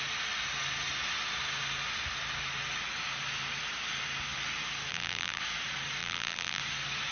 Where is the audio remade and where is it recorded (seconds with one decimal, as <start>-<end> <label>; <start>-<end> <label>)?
0.0-4.9 recorded; 4.9-5.4 remade; 5.4-6.0 recorded; 6.0-6.6 remade; 6.6-7.1 recorded